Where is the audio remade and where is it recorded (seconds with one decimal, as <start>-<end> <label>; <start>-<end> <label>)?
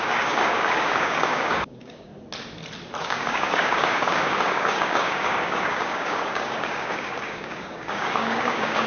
0.0-2.1 remade; 2.1-3.0 recorded; 3.0-8.9 remade